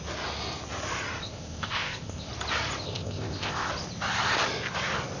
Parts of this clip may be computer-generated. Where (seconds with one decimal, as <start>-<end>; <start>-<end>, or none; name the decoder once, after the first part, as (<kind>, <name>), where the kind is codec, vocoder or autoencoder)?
1.2-2.3 (codec, ZipCodec); 2.8-3.7